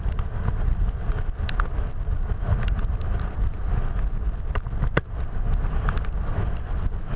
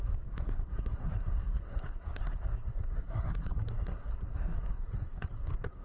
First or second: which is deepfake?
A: second